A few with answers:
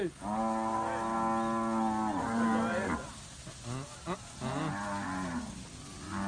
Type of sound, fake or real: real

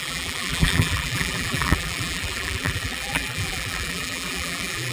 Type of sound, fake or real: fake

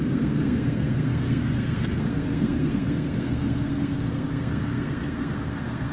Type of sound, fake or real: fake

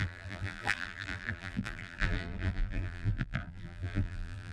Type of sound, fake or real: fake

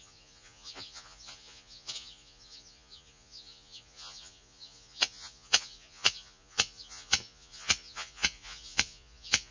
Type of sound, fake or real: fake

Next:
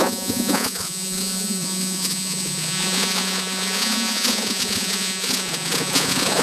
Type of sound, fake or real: fake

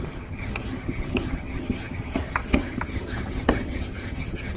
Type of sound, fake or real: fake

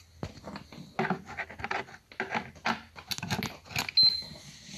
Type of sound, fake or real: real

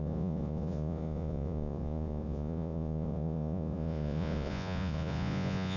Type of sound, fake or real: fake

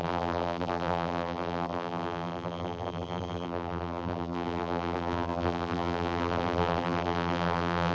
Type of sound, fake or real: fake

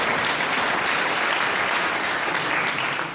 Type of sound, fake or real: real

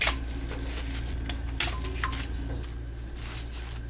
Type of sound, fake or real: real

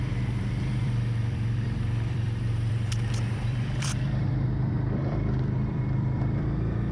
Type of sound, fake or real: fake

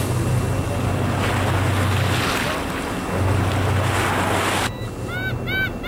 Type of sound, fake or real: real